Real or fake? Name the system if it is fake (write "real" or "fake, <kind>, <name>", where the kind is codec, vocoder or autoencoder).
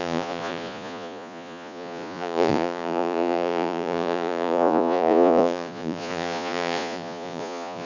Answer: fake, vocoder, Vocos